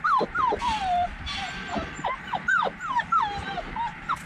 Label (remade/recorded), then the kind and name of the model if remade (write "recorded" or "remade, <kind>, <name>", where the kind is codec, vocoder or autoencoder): recorded